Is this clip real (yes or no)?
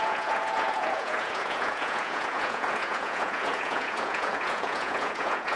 no